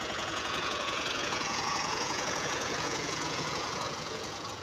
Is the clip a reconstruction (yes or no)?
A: yes